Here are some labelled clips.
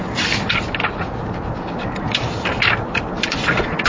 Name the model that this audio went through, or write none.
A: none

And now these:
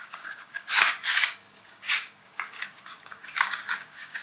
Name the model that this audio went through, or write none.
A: codec, DAC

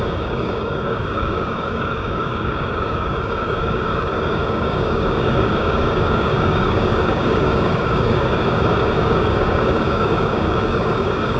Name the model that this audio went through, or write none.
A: codec, DAC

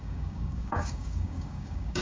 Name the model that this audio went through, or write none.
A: codec, DAC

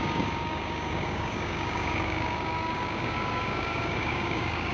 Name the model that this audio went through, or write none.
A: codec, DAC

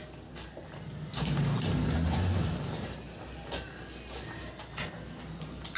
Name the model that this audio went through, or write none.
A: none